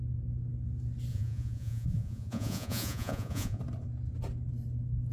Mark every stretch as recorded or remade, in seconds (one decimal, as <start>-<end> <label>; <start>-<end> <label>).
0.0-1.1 recorded; 1.1-3.6 remade; 3.6-5.1 recorded